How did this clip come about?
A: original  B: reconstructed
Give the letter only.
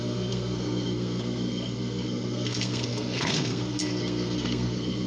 B